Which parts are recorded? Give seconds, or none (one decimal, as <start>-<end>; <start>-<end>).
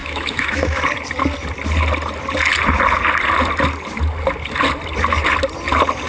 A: 0.8-6.1